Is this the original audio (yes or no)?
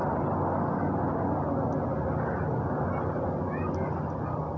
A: yes